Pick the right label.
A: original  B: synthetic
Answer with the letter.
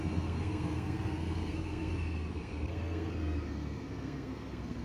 B